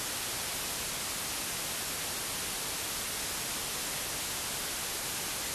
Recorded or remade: recorded